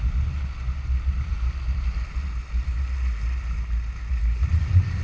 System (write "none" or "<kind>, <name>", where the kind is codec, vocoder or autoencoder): none